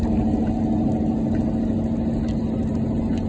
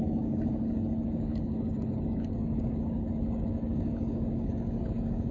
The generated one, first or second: second